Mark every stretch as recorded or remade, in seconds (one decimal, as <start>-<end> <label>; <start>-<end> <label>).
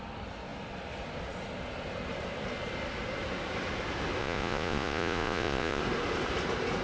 0.0-4.2 recorded; 4.2-5.8 remade; 5.8-6.8 recorded